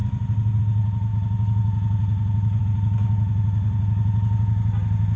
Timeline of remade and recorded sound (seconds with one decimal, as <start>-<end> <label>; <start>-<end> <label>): 0.0-5.2 recorded